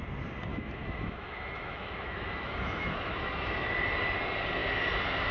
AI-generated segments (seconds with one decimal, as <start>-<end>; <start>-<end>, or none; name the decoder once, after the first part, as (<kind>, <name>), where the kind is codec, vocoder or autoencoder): 0.5-3.7 (autoencoder, DAC-VAE)

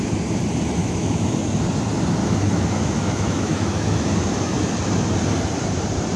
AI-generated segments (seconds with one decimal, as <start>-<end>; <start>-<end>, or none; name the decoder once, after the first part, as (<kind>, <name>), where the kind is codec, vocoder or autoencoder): 0.8-1.4 (autoencoder, DAC-VAE); 2.2-4.7

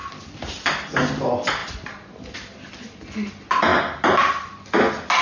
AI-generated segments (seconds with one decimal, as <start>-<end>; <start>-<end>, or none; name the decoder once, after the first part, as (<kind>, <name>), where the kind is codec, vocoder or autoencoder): none

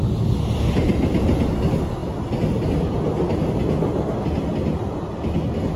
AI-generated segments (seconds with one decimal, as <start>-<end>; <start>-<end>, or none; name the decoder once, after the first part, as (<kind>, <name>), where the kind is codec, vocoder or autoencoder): none

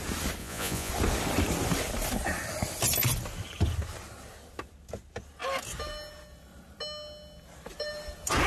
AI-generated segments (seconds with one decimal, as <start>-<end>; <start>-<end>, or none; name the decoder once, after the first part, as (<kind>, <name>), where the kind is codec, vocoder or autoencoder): 0.4-0.9 (vocoder, Vocos)

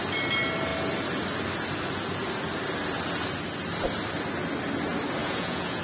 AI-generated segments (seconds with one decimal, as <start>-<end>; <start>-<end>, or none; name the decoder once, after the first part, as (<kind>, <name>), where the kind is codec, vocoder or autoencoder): 5.2-5.8 (vocoder, Vocos)

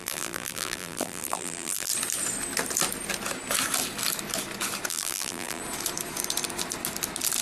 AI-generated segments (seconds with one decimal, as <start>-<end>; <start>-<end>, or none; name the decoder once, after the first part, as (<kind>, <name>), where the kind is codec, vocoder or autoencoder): 0.0-1.9 (vocoder, BigVGAN v2); 4.9-5.6